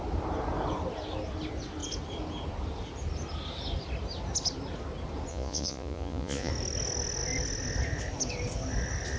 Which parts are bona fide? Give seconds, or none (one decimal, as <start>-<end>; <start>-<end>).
0.0-5.3; 6.5-9.2